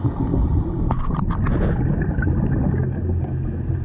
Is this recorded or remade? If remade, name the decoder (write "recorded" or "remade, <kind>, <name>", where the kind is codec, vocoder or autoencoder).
recorded